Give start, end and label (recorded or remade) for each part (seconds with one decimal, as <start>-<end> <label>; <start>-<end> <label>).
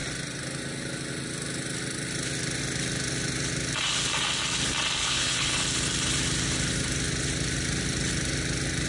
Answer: 0.0-5.0 recorded; 5.0-5.6 remade; 5.6-8.9 recorded